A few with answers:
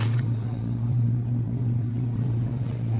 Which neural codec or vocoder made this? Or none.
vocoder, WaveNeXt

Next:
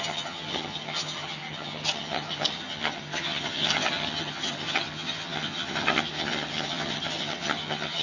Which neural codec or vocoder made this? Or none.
vocoder, HiFi-GAN